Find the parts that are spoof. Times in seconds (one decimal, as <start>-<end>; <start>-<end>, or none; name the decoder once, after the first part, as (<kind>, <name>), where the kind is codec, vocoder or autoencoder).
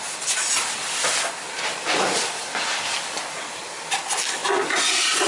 none